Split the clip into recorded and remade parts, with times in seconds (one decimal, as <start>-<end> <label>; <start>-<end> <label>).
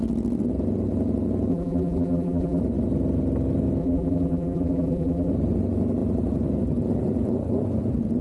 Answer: 0.0-1.5 recorded; 1.5-2.6 remade; 2.6-3.8 recorded; 3.8-5.3 remade; 5.3-8.2 recorded